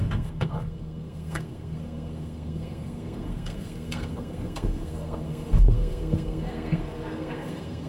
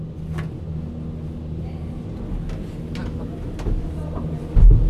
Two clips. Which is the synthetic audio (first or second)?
first